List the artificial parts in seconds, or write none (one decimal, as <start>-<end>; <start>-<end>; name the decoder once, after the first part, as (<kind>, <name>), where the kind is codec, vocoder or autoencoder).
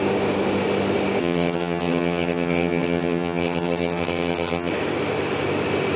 1.2-4.7 (vocoder, HiFi-GAN)